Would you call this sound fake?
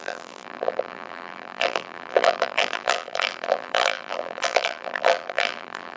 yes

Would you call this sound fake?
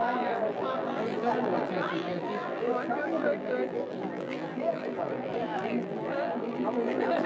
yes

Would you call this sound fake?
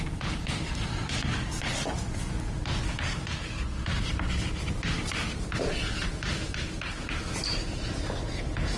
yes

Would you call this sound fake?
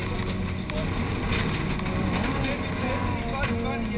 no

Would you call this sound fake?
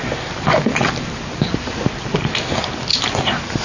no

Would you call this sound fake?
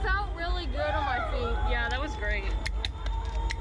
no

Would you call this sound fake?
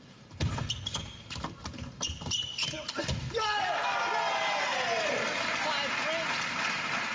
no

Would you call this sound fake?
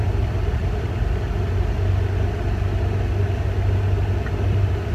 no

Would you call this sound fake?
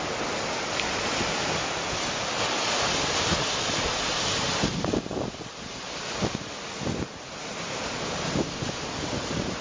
no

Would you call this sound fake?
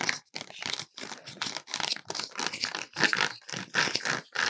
no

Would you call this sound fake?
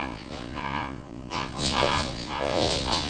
yes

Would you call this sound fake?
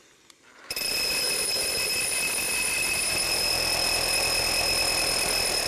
yes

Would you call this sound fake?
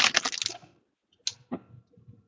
no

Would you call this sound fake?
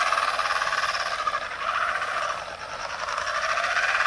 no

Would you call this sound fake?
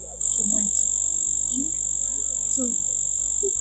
no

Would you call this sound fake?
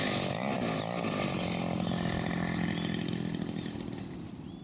no